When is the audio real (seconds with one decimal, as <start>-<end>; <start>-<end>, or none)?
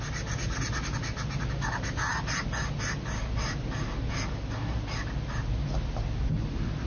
0.0-6.9